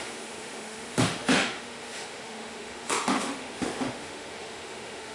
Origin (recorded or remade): remade